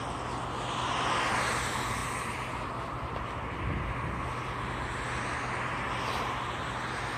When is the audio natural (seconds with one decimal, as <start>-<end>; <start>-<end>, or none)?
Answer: 0.0-7.2